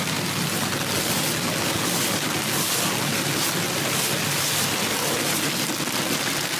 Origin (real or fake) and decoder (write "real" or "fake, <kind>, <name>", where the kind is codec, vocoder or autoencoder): real